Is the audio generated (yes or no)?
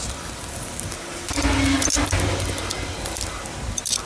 no